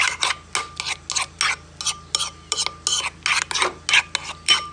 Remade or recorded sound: recorded